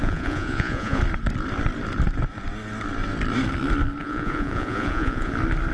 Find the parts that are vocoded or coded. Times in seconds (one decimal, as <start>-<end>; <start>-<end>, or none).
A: 0.0-1.0; 4.0-5.3